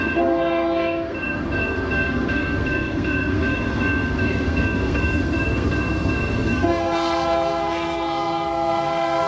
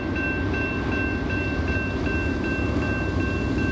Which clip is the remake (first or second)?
first